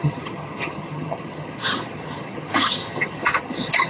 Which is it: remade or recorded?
remade